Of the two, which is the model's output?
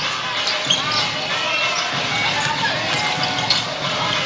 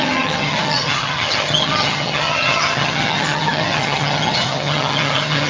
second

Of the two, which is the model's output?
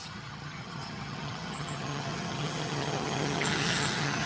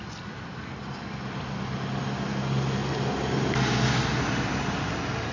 first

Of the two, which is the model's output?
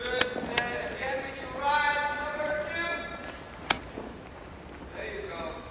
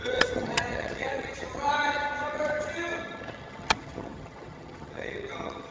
second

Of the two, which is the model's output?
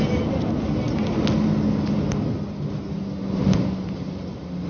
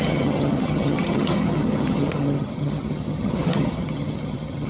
second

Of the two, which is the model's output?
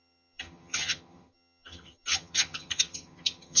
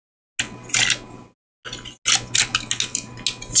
first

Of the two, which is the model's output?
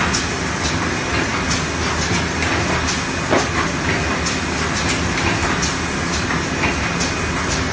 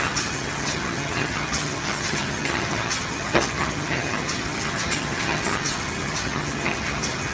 second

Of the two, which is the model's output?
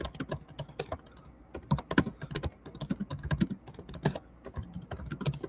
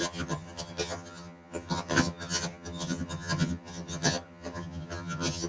second